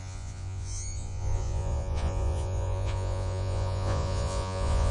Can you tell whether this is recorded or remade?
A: remade